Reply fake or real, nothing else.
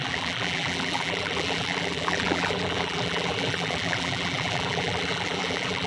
fake